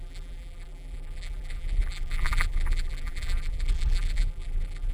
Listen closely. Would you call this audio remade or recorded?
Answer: remade